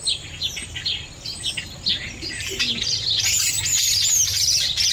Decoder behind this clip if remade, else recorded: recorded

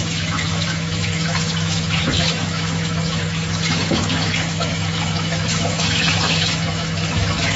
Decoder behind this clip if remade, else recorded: remade, autoencoder, DAC-VAE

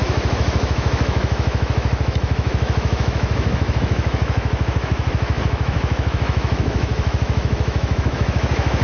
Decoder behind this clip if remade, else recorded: remade, autoencoder, DAC-VAE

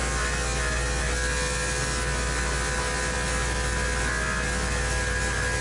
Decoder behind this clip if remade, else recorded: recorded